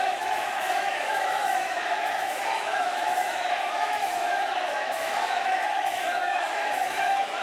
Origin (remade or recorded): remade